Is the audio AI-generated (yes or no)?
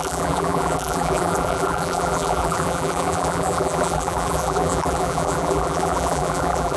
yes